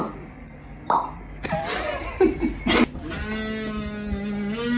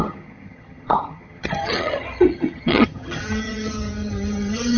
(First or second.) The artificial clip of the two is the second